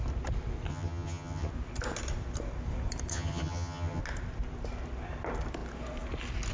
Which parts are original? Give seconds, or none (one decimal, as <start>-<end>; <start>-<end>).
0.0-0.7; 1.5-3.1; 4.0-6.5